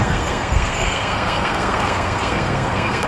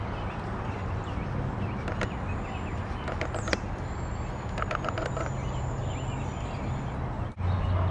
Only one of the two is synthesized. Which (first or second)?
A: first